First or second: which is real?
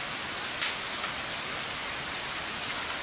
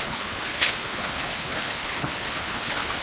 first